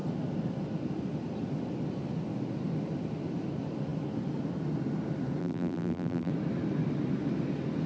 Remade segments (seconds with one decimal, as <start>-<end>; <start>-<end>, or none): 5.4-6.3